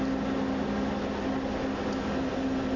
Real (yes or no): yes